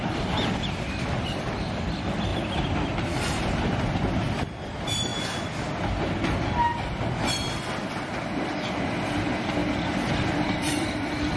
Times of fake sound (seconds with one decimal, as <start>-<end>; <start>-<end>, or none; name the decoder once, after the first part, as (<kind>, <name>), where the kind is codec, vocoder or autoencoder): 0.0-5.1 (vocoder, BigVGAN v2); 9.1-11.4